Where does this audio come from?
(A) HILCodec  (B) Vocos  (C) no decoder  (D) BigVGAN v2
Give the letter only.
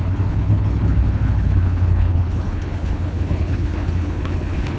A